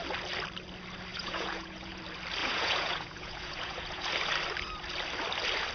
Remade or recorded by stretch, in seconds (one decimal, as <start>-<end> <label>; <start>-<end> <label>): 0.0-1.1 recorded; 1.1-2.0 remade; 2.0-2.4 recorded; 2.4-4.1 remade; 4.1-5.7 recorded